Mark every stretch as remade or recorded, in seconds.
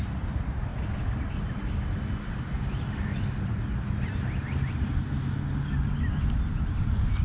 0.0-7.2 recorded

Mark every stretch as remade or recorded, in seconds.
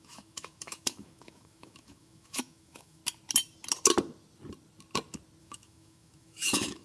0.0-3.0 remade; 3.0-5.4 recorded; 5.4-6.8 remade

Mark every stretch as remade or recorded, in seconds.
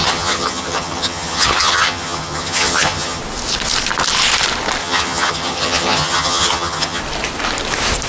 0.0-3.2 remade; 3.2-4.8 recorded; 4.8-7.0 remade; 7.0-8.1 recorded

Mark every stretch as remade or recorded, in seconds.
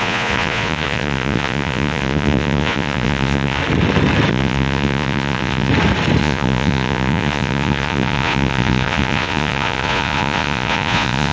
0.0-3.6 remade; 3.6-4.3 recorded; 4.3-5.7 remade; 5.7-6.2 recorded; 6.2-11.3 remade